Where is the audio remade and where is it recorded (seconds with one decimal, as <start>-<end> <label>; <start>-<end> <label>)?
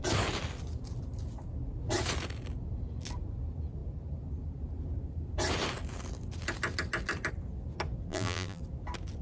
0.0-8.1 recorded; 8.1-8.6 remade; 8.6-9.2 recorded